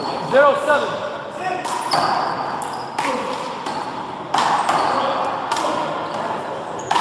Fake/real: real